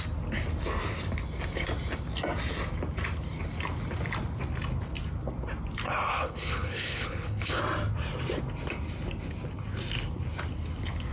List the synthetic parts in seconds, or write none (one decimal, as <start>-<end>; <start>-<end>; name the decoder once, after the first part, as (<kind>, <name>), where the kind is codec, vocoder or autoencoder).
6.1-7.6 (codec, HILCodec)